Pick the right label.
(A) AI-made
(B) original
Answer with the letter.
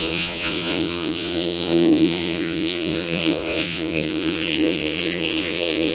A